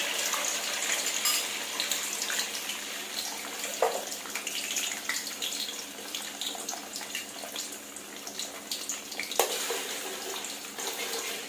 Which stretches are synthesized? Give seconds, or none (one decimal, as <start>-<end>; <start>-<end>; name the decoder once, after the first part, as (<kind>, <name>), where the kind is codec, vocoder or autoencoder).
none